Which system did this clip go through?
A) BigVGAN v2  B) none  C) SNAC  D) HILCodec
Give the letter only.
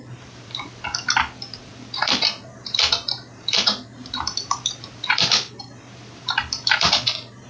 A